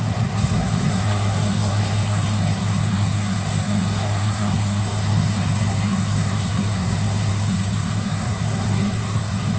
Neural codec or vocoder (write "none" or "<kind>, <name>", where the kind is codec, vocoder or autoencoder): codec, SNAC